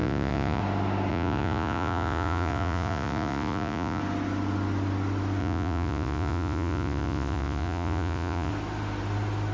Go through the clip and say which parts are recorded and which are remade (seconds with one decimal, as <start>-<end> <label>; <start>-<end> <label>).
0.0-0.6 remade; 0.6-1.1 recorded; 1.1-4.0 remade; 4.0-5.4 recorded; 5.4-8.5 remade; 8.5-9.5 recorded